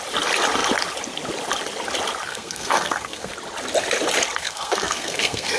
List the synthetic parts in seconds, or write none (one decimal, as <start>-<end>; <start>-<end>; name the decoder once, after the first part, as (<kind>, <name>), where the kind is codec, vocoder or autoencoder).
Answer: 2.3-3.3 (codec, SNAC); 4.4-5.6

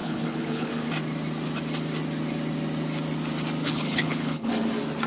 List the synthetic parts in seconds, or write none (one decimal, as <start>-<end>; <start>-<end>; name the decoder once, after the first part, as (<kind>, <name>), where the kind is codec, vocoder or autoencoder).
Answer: 0.0-0.7 (codec, HILCodec); 3.6-4.5

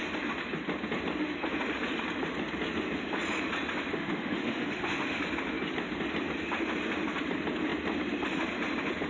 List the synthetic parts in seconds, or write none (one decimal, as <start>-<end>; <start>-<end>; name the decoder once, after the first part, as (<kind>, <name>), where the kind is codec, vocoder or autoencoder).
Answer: 3.9-5.2 (autoencoder, DAC-VAE)

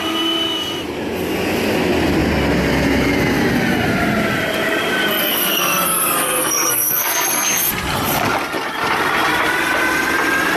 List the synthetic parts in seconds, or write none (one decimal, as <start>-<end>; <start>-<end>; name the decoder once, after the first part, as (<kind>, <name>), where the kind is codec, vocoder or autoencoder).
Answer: 5.2-7.7 (codec, SNAC)

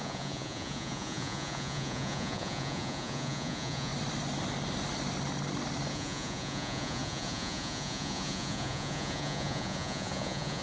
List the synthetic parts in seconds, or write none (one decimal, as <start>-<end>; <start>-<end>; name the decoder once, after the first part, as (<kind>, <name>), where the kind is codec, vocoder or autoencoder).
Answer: 0.0-3.9 (vocoder, Vocos); 5.9-10.6